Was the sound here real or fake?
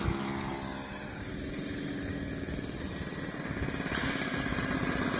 real